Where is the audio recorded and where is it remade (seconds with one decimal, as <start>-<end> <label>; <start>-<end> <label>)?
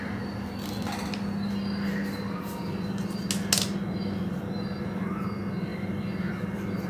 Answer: 0.0-5.7 recorded; 5.7-6.3 remade; 6.3-6.9 recorded